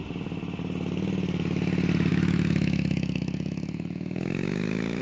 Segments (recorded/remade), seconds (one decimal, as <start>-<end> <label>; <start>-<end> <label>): 0.0-2.1 recorded; 2.1-5.0 remade